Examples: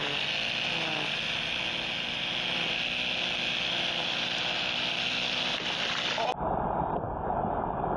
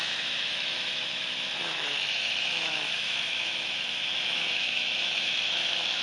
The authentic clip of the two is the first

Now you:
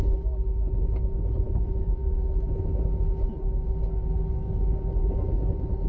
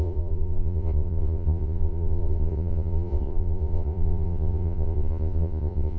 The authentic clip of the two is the first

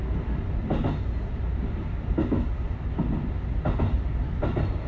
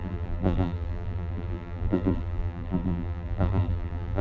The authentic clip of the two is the first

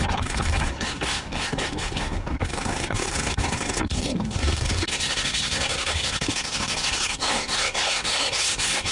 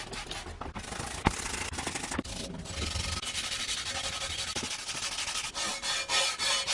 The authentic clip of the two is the second